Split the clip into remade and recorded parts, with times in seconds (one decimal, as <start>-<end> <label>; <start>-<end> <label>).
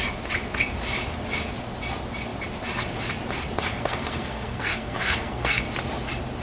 0.0-3.7 recorded; 3.7-5.6 remade; 5.6-6.4 recorded